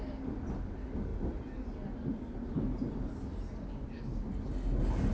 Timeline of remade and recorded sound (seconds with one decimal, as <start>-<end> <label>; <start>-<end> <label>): 0.0-5.1 recorded

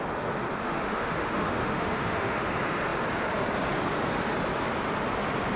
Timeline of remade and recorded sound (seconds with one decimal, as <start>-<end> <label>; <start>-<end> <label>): 0.0-0.6 recorded; 0.6-2.5 remade; 2.5-5.6 recorded

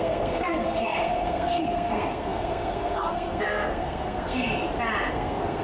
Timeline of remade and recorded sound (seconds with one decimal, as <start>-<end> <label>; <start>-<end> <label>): 0.0-4.6 remade; 4.6-5.1 recorded; 5.1-5.6 remade

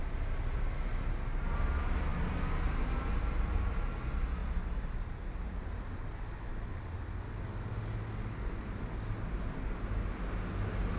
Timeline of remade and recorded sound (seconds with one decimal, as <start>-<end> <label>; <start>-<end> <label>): 0.0-11.0 recorded

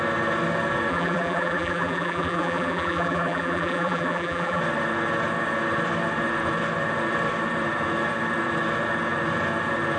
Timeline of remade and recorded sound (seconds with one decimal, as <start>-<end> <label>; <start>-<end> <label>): 0.0-0.9 recorded; 0.9-4.6 remade; 4.6-10.0 recorded

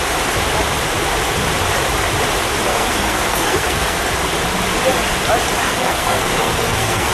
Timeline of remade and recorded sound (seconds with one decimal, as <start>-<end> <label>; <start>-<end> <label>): 0.0-2.7 recorded; 2.7-4.1 remade; 4.1-5.6 recorded; 5.6-7.1 remade

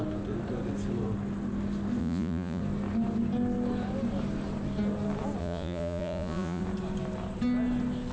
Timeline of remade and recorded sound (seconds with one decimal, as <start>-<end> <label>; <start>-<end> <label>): 0.0-2.0 recorded; 2.0-2.6 remade; 2.6-5.4 recorded; 5.4-6.6 remade; 6.6-8.1 recorded

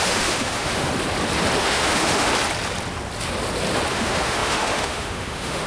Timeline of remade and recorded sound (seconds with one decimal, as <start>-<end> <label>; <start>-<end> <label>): 0.0-0.9 remade; 0.9-1.6 recorded; 1.6-2.3 remade; 2.3-3.9 recorded; 3.9-5.7 remade